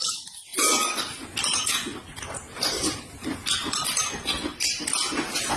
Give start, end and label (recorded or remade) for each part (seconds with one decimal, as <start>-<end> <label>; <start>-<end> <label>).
0.0-5.6 recorded